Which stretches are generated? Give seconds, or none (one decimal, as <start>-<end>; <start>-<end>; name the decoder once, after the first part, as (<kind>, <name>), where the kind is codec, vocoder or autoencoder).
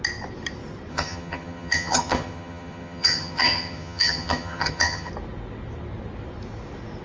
0.9-5.1 (vocoder, HiFi-GAN)